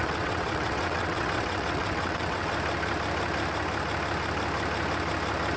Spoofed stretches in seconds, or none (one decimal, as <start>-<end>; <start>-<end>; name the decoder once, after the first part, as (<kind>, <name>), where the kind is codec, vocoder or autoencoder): 0.0-2.5 (vocoder, WaveNeXt)